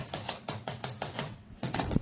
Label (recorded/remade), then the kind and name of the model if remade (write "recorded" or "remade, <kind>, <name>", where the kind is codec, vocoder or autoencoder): remade, vocoder, WaveNeXt